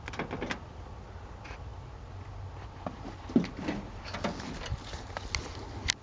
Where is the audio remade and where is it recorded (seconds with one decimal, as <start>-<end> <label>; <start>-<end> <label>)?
0.0-6.0 recorded